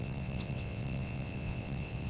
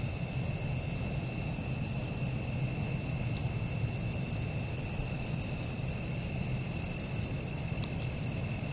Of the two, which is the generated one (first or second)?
first